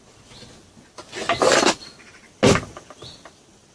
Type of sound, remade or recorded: recorded